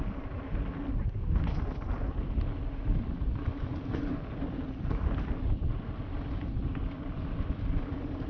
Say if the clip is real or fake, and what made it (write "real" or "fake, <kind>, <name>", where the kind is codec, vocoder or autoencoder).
real